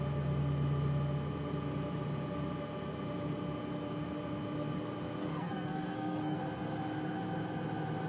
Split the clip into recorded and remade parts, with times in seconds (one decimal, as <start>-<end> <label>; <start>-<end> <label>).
0.0-5.3 recorded; 5.3-6.4 remade; 6.4-8.1 recorded